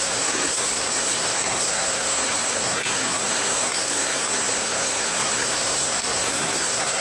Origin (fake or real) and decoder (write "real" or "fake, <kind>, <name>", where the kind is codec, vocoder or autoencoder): fake, codec, SNAC